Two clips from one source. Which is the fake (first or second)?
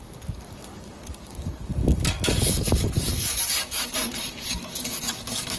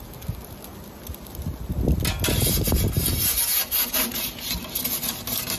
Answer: first